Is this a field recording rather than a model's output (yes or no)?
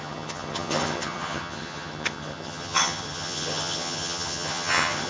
no